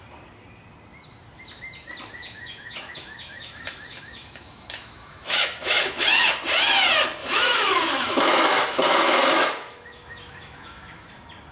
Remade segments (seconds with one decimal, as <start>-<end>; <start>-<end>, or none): 2.2-6.3; 7.2-11.1